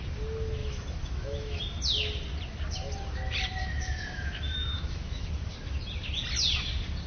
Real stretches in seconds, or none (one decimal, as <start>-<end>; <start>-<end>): 0.0-0.6; 1.6-3.6; 5.3-7.1